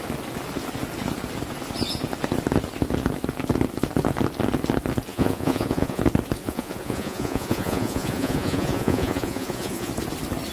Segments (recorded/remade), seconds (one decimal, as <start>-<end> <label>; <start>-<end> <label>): 0.0-5.1 recorded; 5.1-6.0 remade; 6.0-6.4 recorded; 6.4-9.9 remade; 9.9-10.5 recorded